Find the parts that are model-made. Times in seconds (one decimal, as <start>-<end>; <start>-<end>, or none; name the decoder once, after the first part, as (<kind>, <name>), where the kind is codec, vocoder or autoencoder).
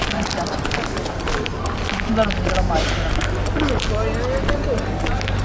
none